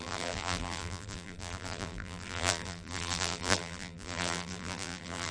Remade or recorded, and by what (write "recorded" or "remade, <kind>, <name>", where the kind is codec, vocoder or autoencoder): remade, vocoder, BigVGAN v2